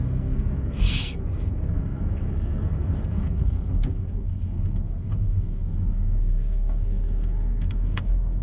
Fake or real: fake